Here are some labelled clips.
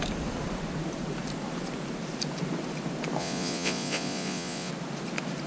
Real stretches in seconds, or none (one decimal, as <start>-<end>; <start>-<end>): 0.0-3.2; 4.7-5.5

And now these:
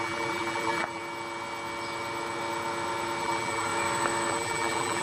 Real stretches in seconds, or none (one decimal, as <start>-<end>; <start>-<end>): 1.0-3.2; 3.7-4.3

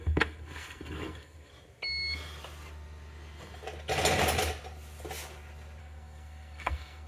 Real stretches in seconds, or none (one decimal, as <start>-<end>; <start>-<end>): 1.5-5.8

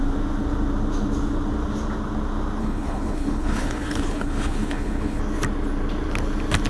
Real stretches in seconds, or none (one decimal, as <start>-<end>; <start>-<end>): 0.0-2.6; 5.2-6.7